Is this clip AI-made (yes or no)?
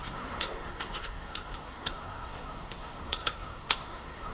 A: yes